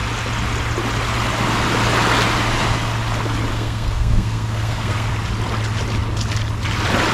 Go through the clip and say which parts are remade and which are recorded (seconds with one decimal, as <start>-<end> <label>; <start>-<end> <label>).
0.0-3.5 recorded; 3.5-5.1 remade; 5.1-7.1 recorded